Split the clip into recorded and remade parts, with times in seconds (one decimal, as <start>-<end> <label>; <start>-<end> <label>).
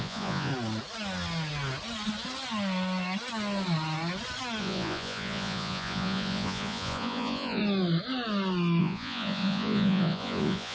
0.0-0.5 remade; 0.5-4.6 recorded; 4.6-7.6 remade; 7.6-8.8 recorded; 8.8-10.7 remade